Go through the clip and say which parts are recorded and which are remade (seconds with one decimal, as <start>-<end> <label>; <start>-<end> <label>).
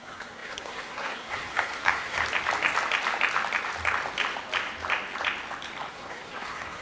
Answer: 0.0-2.2 remade; 2.2-5.9 recorded; 5.9-6.8 remade